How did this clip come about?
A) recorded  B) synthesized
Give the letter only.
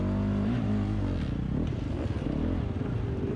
A